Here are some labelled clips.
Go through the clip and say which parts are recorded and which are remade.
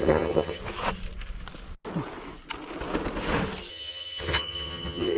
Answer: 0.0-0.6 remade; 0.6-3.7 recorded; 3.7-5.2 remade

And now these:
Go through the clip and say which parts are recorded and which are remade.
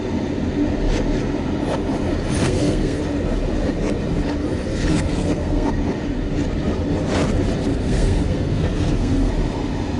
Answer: 0.0-2.4 recorded; 2.4-3.0 remade; 3.0-4.9 recorded; 4.9-5.7 remade; 5.7-7.7 recorded; 7.7-9.3 remade; 9.3-10.0 recorded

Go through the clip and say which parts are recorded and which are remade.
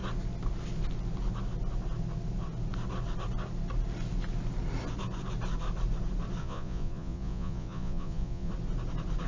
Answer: 0.0-6.4 recorded; 6.4-8.5 remade; 8.5-9.3 recorded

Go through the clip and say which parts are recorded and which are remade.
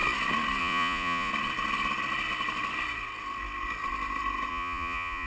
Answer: 0.0-0.6 recorded; 0.6-1.3 remade; 1.3-4.5 recorded; 4.5-5.3 remade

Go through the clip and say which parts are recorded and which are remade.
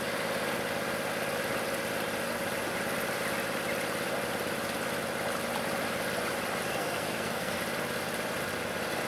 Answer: 0.0-6.7 recorded; 6.7-7.6 remade; 7.6-9.1 recorded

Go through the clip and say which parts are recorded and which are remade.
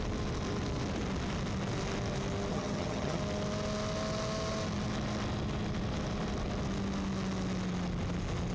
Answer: 0.0-2.5 recorded; 2.5-3.2 remade; 3.2-8.5 recorded